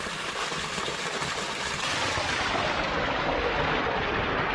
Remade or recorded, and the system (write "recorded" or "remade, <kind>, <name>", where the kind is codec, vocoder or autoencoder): recorded